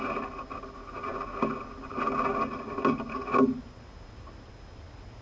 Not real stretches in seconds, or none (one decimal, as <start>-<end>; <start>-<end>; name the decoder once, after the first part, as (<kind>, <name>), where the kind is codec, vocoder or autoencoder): none